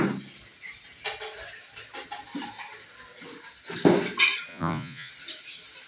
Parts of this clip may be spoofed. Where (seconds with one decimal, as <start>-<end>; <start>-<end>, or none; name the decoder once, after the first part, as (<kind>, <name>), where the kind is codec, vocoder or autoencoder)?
4.5-5.1 (vocoder, Vocos)